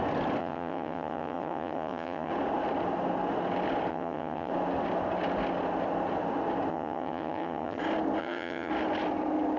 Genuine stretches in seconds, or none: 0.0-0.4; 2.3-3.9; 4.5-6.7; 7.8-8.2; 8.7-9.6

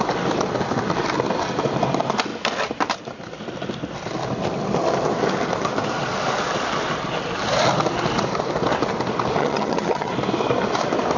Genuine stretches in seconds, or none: 0.0-9.4; 10.1-11.2

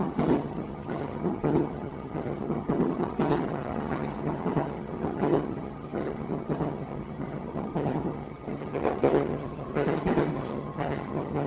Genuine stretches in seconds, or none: none